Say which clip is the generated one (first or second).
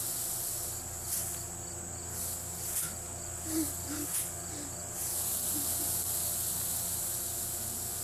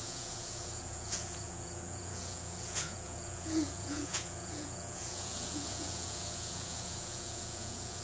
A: second